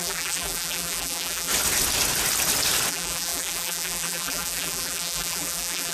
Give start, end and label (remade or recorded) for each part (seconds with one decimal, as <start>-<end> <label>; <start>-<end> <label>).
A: 0.0-1.5 remade; 1.5-2.9 recorded; 2.9-5.9 remade